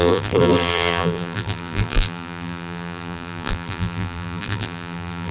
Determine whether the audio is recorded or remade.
remade